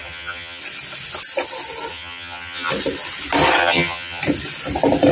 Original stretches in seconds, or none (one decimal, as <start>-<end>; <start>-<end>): 0.6-1.9; 2.7-3.6; 4.2-5.1